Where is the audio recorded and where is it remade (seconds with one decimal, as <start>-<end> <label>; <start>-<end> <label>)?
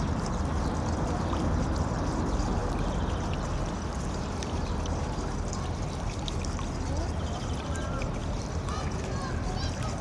0.0-10.0 recorded